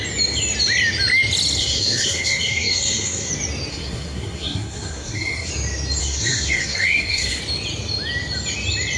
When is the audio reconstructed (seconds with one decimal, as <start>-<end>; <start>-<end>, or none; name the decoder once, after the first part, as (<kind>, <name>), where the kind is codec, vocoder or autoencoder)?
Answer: 1.6-3.3 (codec, SNAC); 3.7-5.5; 6.0-7.4